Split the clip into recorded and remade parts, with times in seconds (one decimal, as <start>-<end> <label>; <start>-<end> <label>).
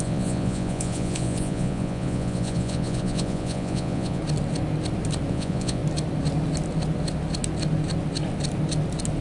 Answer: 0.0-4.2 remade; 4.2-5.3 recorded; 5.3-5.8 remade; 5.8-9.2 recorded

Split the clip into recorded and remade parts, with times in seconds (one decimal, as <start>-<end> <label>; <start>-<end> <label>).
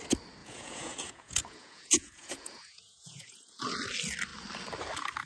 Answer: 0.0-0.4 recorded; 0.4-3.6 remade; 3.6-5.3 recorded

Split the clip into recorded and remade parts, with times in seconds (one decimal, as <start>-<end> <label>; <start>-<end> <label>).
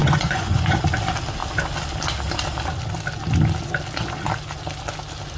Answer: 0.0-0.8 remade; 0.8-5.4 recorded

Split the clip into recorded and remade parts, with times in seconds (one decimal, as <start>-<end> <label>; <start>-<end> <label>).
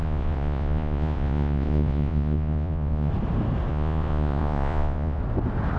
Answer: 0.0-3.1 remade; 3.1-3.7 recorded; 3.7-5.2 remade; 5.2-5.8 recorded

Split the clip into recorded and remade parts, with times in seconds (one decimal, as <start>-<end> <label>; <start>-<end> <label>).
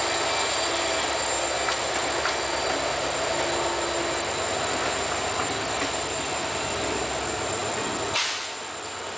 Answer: 0.0-9.2 recorded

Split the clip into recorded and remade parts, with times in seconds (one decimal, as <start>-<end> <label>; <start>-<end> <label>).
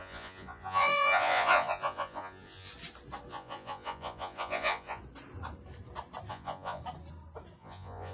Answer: 0.0-2.7 remade; 2.7-3.3 recorded; 3.3-5.0 remade; 5.0-6.3 recorded; 6.3-6.8 remade; 6.8-7.6 recorded; 7.6-8.1 remade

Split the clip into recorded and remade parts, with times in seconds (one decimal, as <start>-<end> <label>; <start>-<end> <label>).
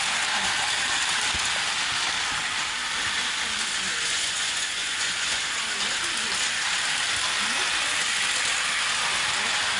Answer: 0.0-3.9 recorded; 3.9-5.4 remade; 5.4-9.8 recorded